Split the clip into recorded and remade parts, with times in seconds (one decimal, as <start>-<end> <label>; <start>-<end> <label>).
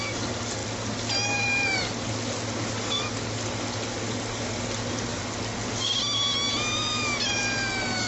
0.0-5.1 remade; 5.1-7.2 recorded; 7.2-8.1 remade